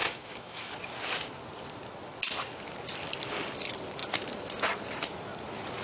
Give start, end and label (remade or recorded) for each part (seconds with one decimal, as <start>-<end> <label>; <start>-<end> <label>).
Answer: 0.0-0.7 remade; 0.7-5.8 recorded